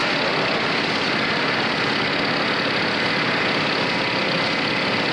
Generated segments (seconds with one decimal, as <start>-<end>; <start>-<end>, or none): none